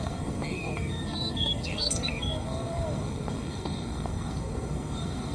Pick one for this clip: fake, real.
fake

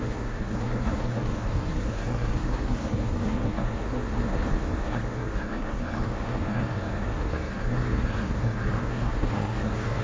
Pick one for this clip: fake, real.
fake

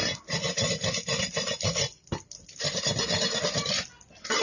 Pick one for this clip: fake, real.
real